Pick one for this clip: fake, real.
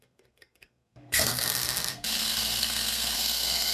fake